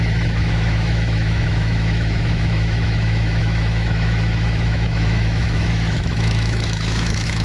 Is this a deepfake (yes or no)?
yes